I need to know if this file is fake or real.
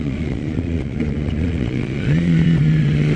fake